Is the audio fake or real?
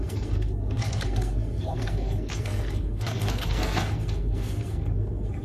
fake